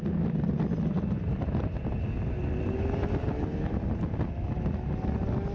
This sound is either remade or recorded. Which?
recorded